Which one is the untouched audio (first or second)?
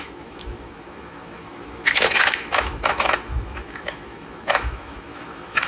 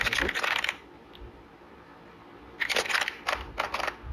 second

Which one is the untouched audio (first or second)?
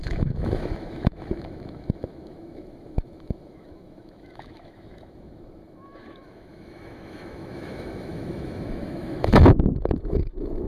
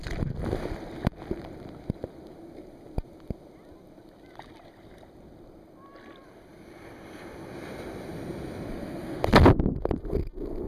second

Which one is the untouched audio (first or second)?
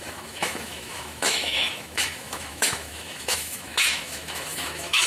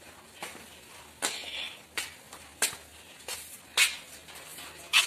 second